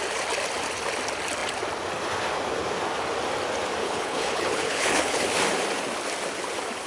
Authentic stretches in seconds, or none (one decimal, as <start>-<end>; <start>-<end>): 0.0-3.8; 5.2-6.9